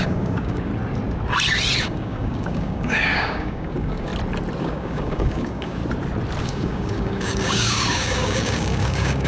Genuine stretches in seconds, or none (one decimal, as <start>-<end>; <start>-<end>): 0.7-1.8; 4.1-4.6; 5.8-6.4